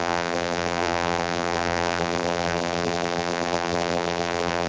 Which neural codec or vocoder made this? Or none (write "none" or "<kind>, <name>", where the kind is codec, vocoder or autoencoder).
vocoder, BigVGAN v2